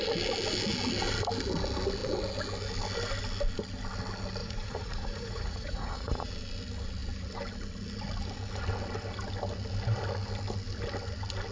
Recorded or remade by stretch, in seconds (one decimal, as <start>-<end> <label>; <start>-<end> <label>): 0.0-4.4 recorded; 4.4-6.3 remade; 6.3-11.5 recorded